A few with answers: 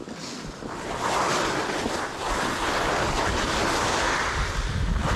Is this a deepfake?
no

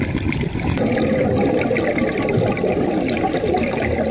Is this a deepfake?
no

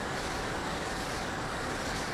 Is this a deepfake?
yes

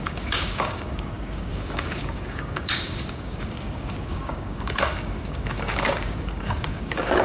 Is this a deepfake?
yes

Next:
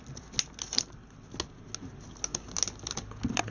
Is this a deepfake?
no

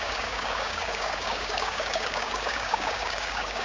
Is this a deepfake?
yes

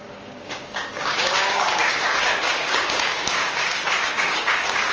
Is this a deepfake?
yes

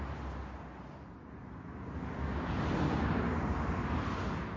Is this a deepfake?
no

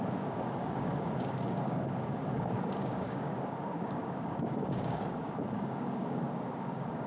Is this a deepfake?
yes